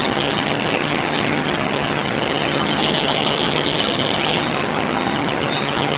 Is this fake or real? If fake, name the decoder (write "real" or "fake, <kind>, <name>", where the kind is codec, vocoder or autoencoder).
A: fake, vocoder, HiFi-GAN